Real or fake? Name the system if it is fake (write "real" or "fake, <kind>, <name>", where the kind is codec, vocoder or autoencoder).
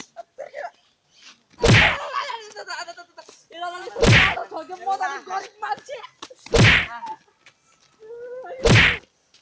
real